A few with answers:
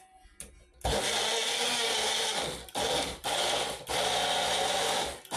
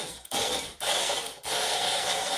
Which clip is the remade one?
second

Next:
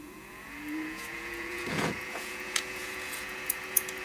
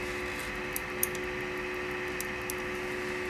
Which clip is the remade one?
first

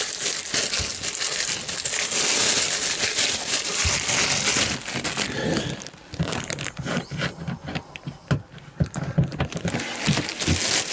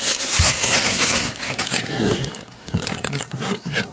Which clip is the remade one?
second